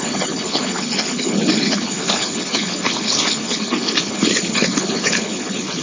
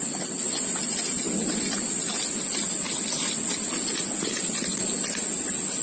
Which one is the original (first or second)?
second